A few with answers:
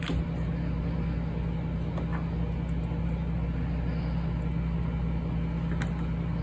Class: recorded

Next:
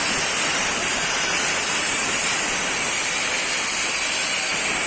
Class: recorded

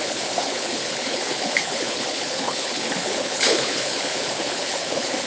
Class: remade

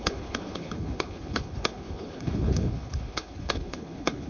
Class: remade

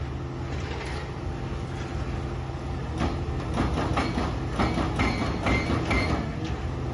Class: recorded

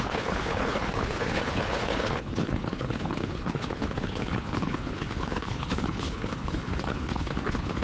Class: remade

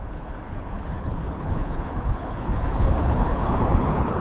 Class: remade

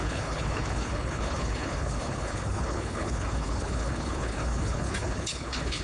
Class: remade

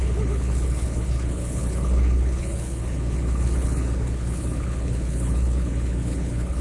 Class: remade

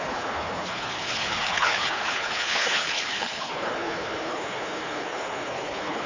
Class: remade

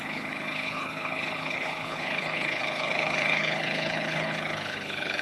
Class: remade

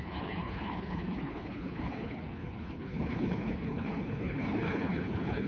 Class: remade